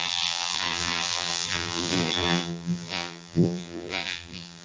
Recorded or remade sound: remade